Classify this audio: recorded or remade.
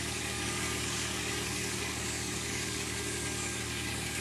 remade